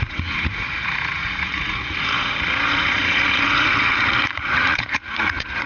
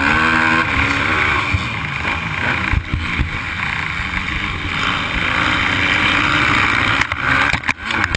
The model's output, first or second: first